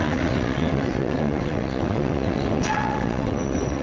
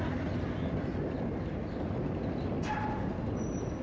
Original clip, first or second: second